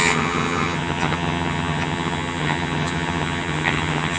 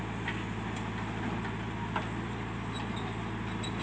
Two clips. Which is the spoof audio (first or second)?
first